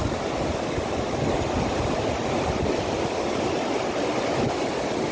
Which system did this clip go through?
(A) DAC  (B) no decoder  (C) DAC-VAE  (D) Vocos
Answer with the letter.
B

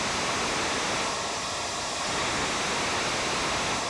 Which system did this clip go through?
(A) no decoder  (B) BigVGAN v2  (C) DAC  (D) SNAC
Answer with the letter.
A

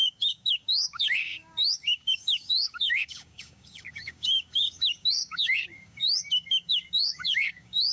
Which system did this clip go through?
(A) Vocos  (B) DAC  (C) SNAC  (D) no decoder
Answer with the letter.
B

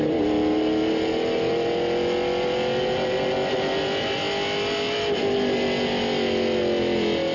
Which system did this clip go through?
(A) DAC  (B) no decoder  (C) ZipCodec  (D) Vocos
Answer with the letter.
B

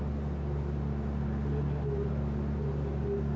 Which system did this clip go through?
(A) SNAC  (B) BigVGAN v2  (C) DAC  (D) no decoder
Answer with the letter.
D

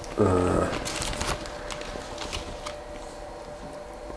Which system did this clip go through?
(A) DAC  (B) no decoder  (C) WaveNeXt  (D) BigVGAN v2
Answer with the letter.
B